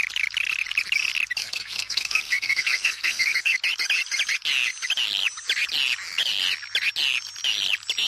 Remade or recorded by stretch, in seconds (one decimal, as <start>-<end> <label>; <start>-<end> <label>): 0.0-1.4 recorded; 1.4-3.6 remade; 3.6-8.1 recorded